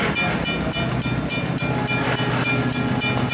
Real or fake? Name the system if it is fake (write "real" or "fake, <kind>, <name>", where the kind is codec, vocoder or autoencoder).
real